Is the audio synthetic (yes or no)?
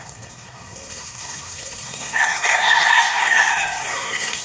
yes